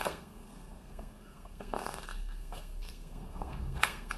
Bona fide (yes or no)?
no